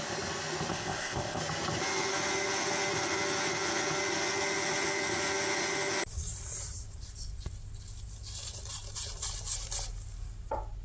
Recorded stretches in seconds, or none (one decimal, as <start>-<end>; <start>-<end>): 0.0-0.7; 1.4-10.8